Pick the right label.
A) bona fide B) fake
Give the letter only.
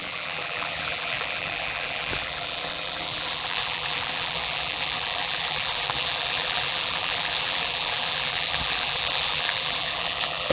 B